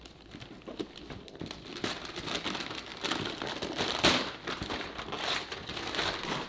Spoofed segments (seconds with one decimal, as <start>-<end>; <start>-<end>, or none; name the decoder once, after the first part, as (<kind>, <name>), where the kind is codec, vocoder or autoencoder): none